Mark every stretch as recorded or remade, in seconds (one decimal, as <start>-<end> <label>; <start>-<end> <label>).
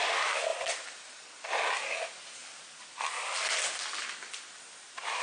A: 0.0-0.5 recorded; 0.5-1.5 remade; 1.5-5.2 recorded